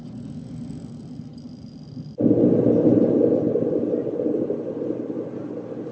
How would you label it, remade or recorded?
recorded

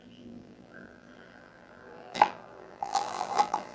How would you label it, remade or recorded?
remade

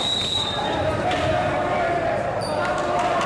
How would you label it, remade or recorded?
remade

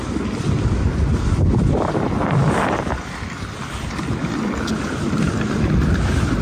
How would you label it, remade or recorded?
recorded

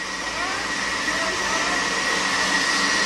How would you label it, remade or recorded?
recorded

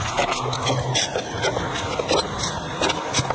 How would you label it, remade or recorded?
recorded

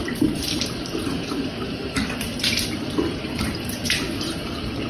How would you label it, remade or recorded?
remade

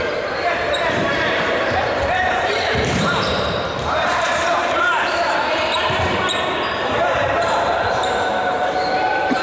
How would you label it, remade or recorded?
remade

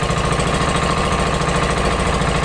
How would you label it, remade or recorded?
recorded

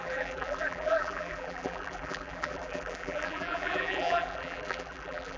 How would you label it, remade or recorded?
remade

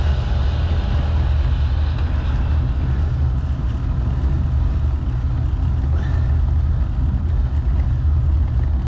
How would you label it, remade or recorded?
recorded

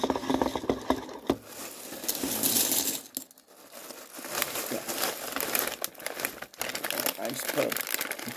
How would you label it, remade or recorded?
recorded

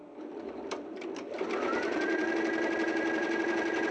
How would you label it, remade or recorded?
remade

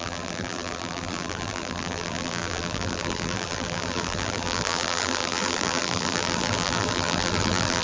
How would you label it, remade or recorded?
remade